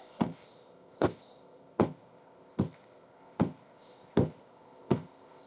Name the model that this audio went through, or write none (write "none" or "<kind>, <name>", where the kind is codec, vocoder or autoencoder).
codec, ZipCodec